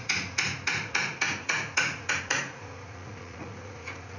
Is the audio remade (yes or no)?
yes